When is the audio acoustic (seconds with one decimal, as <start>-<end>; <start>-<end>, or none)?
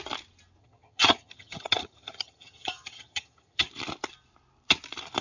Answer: 0.0-0.6; 3.7-5.2